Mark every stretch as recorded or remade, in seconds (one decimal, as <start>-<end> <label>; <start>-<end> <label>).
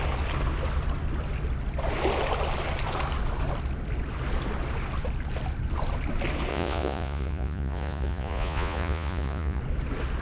0.0-6.5 recorded; 6.5-9.6 remade; 9.6-10.2 recorded